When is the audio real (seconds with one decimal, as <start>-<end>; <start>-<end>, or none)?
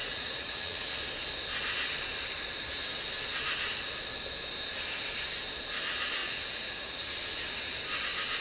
1.0-6.2; 7.1-8.4